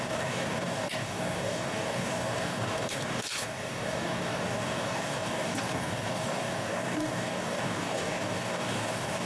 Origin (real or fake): fake